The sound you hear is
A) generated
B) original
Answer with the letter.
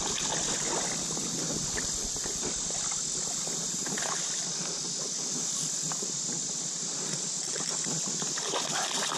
B